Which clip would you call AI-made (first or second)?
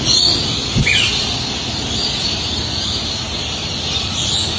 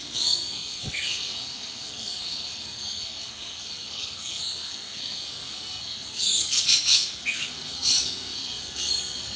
second